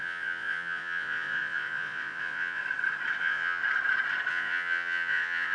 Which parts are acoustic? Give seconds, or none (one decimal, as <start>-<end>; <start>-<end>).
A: 2.6-3.2; 3.6-4.3